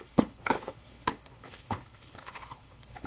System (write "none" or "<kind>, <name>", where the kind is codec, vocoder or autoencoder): codec, HILCodec